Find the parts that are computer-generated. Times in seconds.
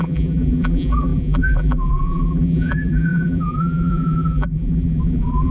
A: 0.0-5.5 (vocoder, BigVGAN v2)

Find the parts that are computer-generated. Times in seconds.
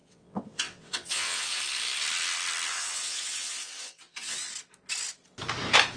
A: 0.0-1.6 (vocoder, WaveNeXt); 2.7-4.4